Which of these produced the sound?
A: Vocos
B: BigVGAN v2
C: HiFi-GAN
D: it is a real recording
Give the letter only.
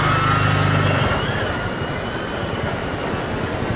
D